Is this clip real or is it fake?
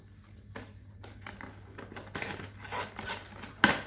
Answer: real